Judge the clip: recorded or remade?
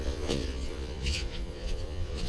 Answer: remade